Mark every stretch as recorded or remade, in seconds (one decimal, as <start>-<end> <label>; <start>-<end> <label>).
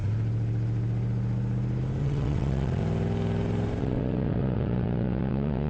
0.0-2.0 recorded; 2.0-2.8 remade; 2.8-3.8 recorded; 3.8-5.7 remade